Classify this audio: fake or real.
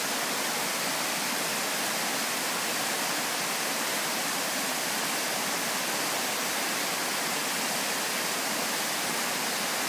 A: real